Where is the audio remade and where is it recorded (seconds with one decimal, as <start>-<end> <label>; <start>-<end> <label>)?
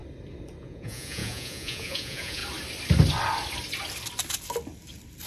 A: 0.0-0.6 recorded; 0.6-2.4 remade; 2.4-5.3 recorded